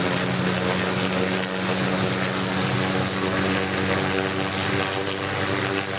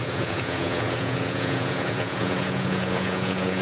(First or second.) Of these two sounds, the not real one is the second